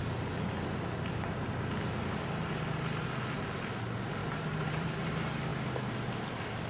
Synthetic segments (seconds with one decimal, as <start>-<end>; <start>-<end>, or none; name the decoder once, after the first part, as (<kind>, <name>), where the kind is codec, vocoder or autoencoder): 4.2-5.1 (vocoder, BigVGAN v2)